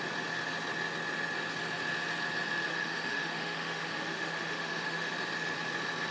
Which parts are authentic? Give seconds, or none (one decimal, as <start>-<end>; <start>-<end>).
0.0-2.7; 5.1-6.1